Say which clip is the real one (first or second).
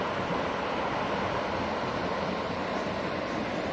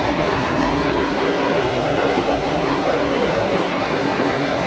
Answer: first